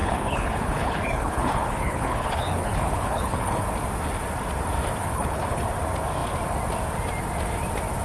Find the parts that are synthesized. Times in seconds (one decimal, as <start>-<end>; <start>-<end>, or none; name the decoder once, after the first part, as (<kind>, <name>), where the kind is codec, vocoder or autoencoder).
0.0-3.6 (codec, HILCodec); 5.0-5.7